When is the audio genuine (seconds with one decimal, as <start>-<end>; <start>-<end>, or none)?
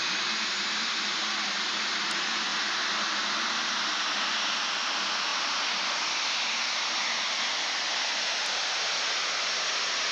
0.0-10.1